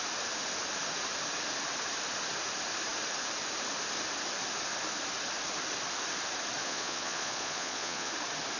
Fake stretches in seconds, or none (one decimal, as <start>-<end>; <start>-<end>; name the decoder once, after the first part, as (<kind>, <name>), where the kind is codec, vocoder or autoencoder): 6.6-8.1 (vocoder, Vocos)